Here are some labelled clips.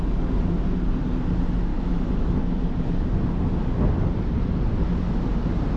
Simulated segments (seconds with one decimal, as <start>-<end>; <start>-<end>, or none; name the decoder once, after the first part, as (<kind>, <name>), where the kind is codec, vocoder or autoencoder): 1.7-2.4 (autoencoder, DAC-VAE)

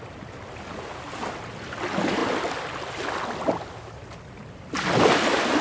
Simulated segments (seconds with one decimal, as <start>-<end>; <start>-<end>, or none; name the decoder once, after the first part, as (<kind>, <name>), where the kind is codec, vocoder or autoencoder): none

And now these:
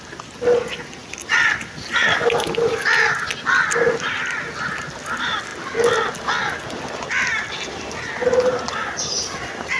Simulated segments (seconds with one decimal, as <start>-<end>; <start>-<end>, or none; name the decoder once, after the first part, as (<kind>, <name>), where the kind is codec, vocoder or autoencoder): none

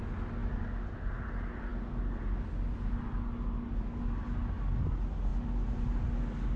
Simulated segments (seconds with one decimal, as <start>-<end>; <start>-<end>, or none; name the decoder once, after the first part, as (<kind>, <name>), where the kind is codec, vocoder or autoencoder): none

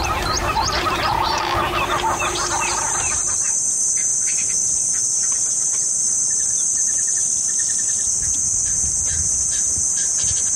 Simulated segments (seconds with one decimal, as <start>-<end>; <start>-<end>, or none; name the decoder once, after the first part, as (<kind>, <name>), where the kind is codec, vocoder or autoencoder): 0.0-1.1 (vocoder, BigVGAN v2); 3.3-4.6; 5.2-7.3; 8.7-10.6

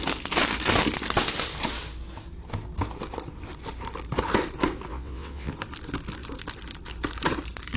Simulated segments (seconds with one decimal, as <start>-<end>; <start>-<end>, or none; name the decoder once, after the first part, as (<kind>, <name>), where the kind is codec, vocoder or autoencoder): 4.9-5.5 (vocoder, WaveNeXt)

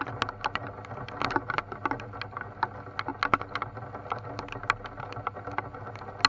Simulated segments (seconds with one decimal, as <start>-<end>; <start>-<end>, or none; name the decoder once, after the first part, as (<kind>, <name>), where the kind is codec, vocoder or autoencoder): none